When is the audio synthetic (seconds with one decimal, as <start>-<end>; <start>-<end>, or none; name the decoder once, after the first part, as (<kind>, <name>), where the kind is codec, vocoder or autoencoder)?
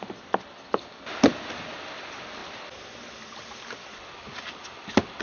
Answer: none